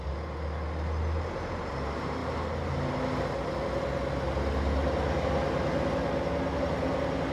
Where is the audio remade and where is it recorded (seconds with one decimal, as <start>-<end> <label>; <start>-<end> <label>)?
0.0-7.3 recorded